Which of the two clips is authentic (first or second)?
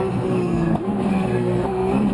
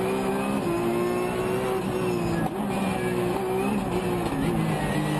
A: second